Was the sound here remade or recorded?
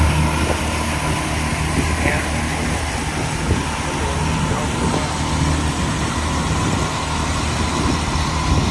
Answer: recorded